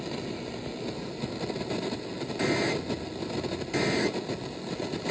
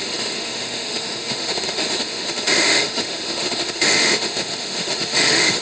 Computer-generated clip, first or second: second